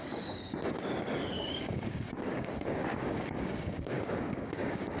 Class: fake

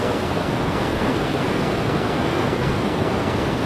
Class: fake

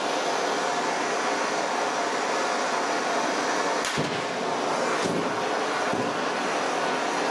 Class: real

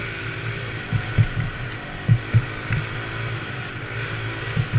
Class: real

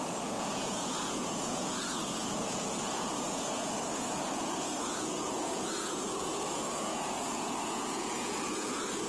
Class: fake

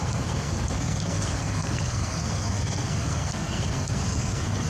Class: fake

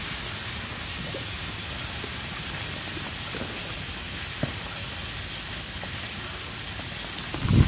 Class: real